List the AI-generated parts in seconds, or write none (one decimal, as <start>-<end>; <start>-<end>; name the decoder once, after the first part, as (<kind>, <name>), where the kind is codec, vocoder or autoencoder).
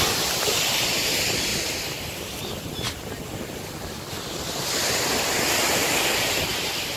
none